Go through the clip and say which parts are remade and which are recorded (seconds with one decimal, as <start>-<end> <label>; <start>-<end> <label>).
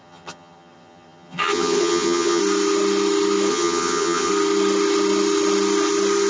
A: 0.0-2.4 remade; 2.4-3.5 recorded; 3.5-4.3 remade; 4.3-6.3 recorded